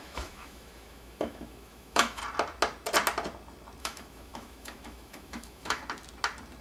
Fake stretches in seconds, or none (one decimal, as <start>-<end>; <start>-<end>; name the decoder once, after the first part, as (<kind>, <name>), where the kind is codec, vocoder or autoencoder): 0.0-2.2 (autoencoder, DAC-VAE); 3.8-5.8